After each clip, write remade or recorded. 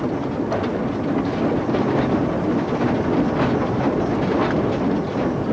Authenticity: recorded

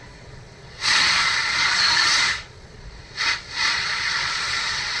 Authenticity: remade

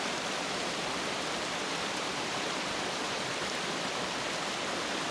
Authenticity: remade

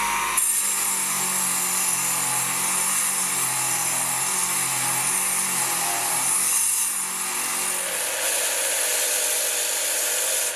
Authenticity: recorded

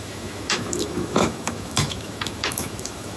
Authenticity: remade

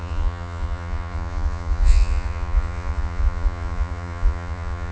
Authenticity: remade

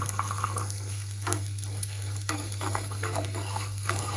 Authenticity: remade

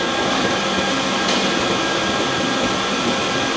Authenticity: recorded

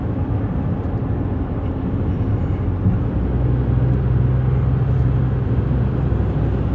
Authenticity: recorded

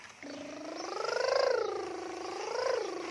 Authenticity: recorded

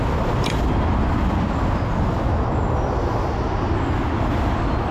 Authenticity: recorded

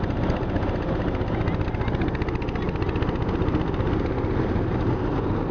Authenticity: recorded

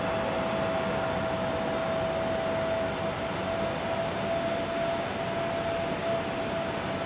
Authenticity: recorded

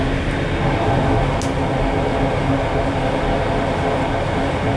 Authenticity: recorded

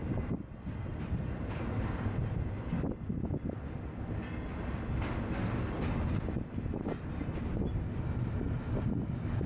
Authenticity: recorded